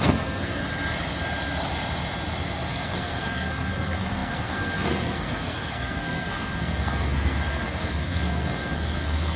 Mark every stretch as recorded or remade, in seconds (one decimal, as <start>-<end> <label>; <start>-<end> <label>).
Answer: 0.0-0.6 remade; 0.6-2.7 recorded; 2.7-9.4 remade